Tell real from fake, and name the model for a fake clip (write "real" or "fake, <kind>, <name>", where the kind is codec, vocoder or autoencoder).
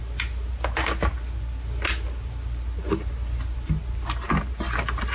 real